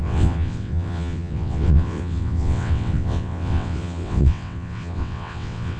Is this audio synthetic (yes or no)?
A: yes